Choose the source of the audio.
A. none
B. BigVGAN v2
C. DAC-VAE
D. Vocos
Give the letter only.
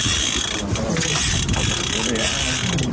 A